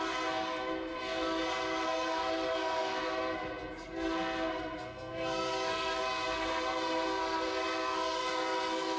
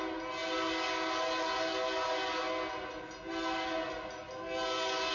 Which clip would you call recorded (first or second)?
second